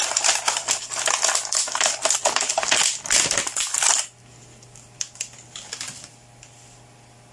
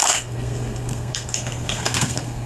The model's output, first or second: second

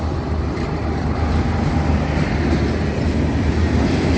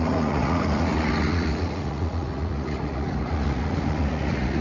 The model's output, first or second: second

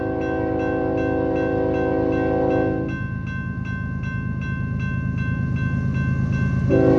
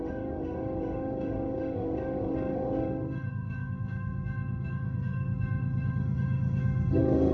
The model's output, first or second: second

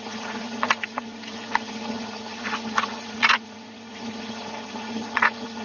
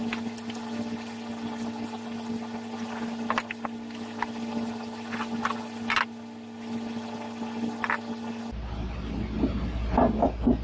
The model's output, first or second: first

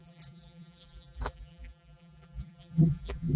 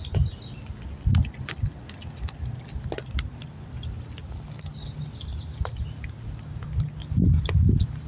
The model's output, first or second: first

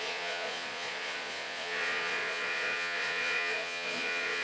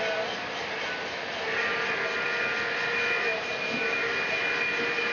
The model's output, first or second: first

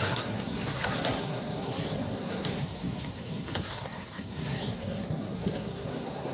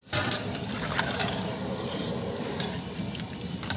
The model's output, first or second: first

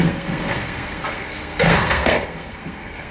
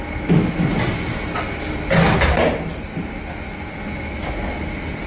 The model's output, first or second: first